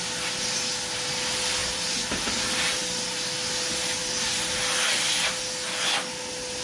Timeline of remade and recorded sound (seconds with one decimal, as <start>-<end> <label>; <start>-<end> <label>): 0.0-1.6 recorded; 1.6-2.8 remade; 2.8-6.6 recorded